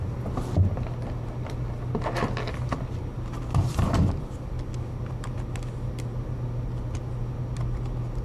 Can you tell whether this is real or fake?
real